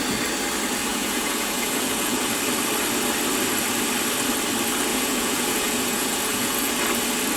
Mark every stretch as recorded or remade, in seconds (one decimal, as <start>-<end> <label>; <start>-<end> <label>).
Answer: 0.0-0.9 recorded; 0.9-2.3 remade; 2.3-4.9 recorded; 4.9-6.7 remade; 6.7-7.4 recorded